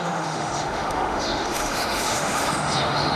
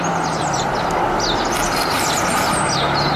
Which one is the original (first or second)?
second